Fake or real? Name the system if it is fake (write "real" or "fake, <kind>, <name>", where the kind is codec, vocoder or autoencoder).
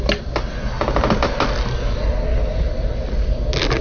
real